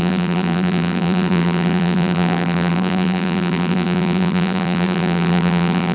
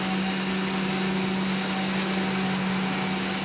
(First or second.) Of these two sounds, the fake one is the first